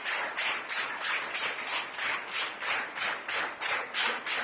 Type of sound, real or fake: real